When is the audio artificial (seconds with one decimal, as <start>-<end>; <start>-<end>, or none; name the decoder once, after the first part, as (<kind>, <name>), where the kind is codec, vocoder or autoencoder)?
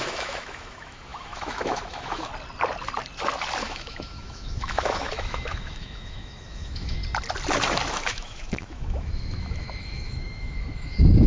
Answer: 0.0-2.3 (autoencoder, DAC-VAE); 3.6-7.0; 7.9-11.3